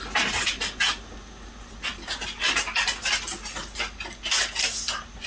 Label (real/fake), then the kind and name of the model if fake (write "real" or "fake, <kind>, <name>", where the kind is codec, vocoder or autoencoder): real